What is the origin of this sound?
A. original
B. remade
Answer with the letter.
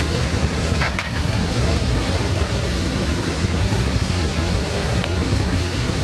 B